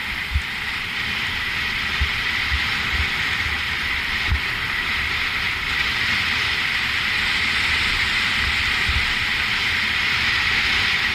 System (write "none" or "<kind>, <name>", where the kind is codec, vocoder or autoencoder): vocoder, BigVGAN v2